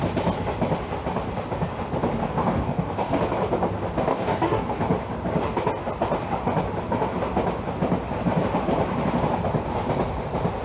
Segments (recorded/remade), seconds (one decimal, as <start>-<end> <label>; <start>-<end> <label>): 0.0-2.2 recorded; 2.2-3.2 remade; 3.2-4.1 recorded; 4.1-4.8 remade; 4.8-10.6 recorded